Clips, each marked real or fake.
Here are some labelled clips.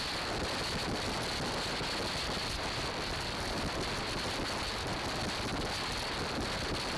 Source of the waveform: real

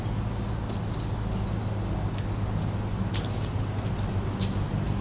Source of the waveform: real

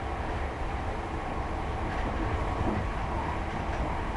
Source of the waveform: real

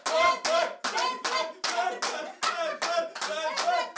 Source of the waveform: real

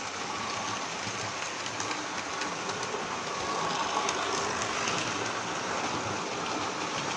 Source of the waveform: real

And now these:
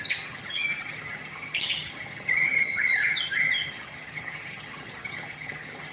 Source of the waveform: fake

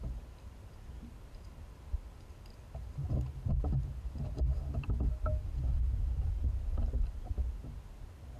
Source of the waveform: real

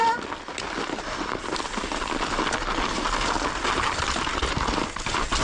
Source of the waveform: real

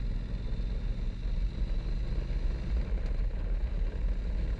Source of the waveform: real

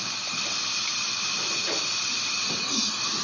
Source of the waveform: real